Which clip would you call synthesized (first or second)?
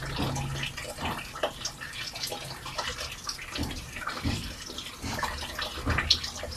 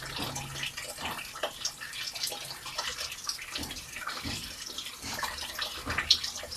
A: second